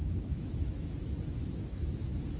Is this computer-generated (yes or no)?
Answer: yes